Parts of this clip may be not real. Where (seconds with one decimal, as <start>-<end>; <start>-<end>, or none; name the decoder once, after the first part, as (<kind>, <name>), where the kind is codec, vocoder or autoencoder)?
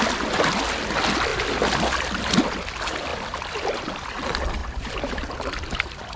1.3-2.3 (vocoder, BigVGAN v2); 3.1-3.8; 4.6-6.2